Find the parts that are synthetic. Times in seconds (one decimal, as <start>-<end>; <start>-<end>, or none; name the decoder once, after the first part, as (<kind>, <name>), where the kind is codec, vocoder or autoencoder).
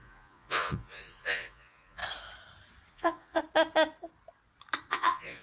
0.0-2.0 (vocoder, Vocos); 2.9-3.4; 4.9-5.4